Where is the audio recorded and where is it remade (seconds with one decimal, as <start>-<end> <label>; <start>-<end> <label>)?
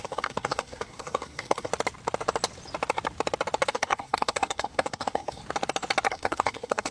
0.0-1.7 remade; 1.7-3.7 recorded; 3.7-5.4 remade; 5.4-6.1 recorded; 6.1-6.9 remade